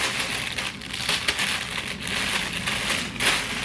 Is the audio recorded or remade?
recorded